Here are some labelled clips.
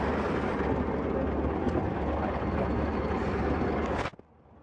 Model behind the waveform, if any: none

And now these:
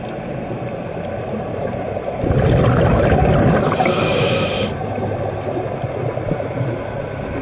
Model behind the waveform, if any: none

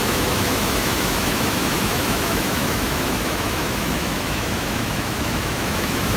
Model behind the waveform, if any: autoencoder, DAC-VAE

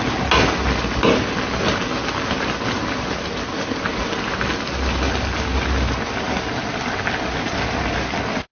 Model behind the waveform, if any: none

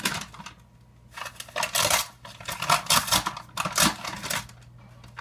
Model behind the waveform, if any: none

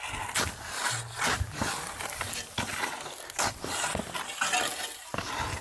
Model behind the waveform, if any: none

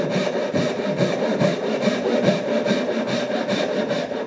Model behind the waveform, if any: none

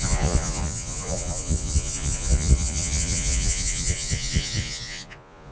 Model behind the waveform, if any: vocoder, Vocos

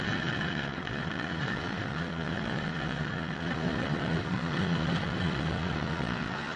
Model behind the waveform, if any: vocoder, Vocos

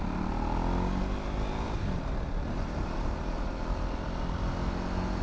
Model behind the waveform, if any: none